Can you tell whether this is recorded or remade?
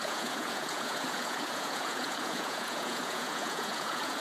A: remade